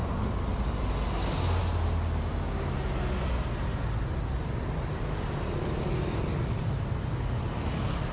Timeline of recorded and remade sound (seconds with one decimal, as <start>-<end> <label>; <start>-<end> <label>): 0.0-8.1 recorded